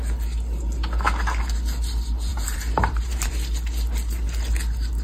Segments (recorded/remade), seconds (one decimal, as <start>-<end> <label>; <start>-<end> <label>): 0.0-2.3 recorded; 2.3-3.3 remade; 3.3-5.0 recorded